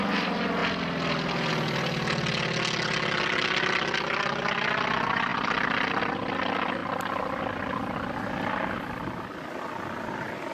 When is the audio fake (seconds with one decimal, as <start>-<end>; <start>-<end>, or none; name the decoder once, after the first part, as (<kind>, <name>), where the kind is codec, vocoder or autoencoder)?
none